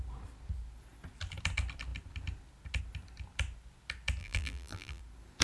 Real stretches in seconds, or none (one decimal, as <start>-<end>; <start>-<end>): 0.0-4.2; 5.0-5.4